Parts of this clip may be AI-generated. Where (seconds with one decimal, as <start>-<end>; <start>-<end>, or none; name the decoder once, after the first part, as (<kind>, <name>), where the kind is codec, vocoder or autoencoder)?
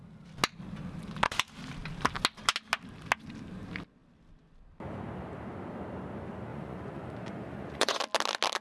6.5-8.0 (vocoder, Vocos)